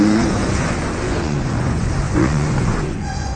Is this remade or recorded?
remade